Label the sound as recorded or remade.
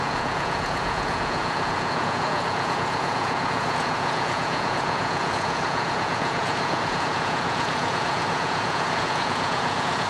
remade